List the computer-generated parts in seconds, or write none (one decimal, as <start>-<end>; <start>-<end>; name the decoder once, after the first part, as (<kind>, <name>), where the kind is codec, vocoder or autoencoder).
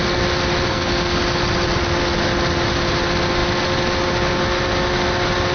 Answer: 0.7-1.2 (codec, SNAC)